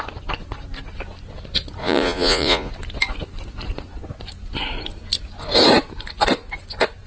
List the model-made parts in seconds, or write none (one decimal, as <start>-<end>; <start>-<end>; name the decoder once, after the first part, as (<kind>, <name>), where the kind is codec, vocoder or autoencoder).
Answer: 1.8-2.7 (vocoder, Vocos)